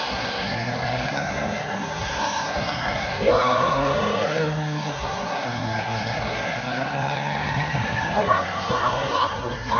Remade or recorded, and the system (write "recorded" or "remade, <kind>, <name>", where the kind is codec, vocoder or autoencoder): remade, codec, SNAC